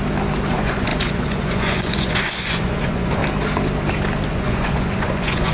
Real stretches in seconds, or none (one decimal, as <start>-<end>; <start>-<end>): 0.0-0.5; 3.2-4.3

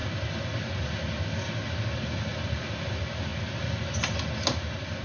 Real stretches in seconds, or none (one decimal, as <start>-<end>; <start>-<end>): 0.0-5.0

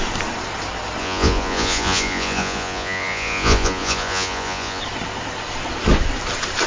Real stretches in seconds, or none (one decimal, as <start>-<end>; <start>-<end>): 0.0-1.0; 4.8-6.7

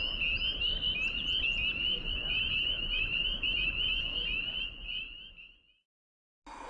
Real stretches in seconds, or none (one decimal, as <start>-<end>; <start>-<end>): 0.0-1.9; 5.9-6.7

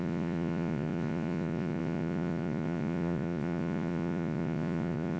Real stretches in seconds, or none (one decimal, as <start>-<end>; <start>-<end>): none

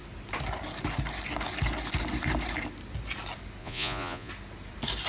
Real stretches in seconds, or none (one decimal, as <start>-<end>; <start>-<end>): 0.0-3.6; 4.3-5.1